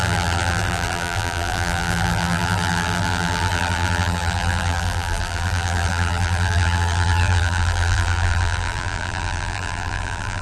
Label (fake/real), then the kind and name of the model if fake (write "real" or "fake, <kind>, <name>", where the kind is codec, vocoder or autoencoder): fake, vocoder, BigVGAN v2